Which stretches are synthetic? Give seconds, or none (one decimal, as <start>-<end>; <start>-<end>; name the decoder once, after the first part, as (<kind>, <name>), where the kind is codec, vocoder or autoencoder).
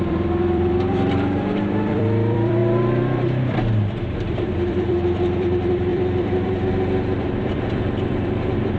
0.0-8.8 (vocoder, BigVGAN v2)